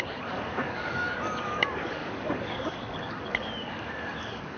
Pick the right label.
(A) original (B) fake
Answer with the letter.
B